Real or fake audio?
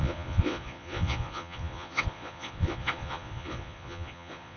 fake